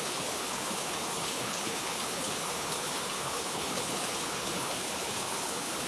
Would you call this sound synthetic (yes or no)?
yes